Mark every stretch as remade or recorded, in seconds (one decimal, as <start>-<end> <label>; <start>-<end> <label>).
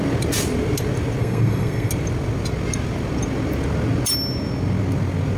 0.0-1.2 recorded; 1.2-1.9 remade; 1.9-5.4 recorded